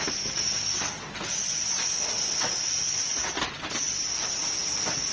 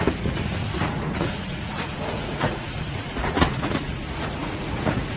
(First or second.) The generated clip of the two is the second